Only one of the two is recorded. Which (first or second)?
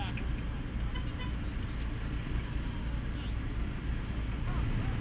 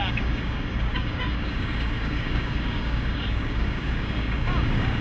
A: first